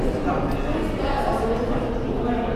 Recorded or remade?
recorded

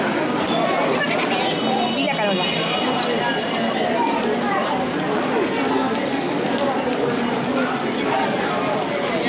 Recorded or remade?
recorded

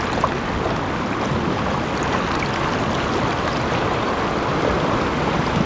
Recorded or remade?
recorded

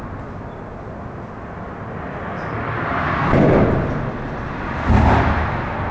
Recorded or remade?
recorded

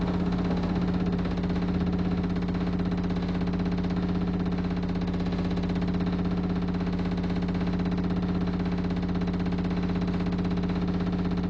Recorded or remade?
recorded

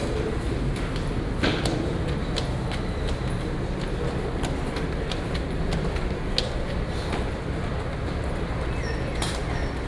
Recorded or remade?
recorded